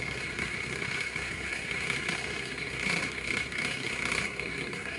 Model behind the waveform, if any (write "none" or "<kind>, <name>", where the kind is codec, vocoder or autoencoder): codec, SNAC